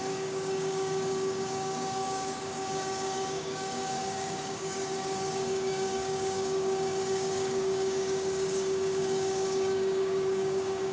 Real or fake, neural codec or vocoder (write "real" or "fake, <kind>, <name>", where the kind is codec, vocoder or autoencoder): fake, codec, DAC